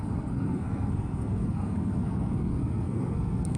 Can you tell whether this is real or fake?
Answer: fake